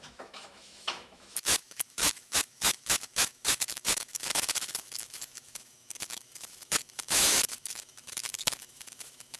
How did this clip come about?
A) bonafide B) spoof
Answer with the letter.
B